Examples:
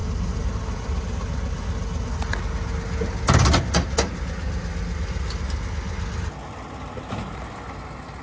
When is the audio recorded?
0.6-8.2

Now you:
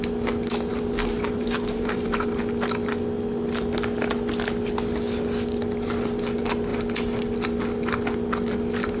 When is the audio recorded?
0.0-0.7; 2.4-9.0

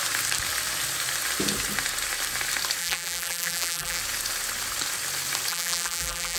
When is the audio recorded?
0.0-2.8; 4.0-5.5